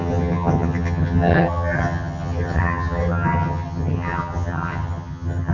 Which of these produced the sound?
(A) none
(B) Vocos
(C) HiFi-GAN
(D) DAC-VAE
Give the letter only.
C